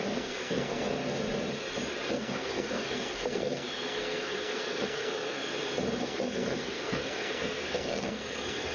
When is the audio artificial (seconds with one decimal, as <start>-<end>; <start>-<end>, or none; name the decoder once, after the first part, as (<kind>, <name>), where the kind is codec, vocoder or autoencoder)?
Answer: 0.0-1.0 (codec, SNAC); 2.1-5.5; 6.0-8.7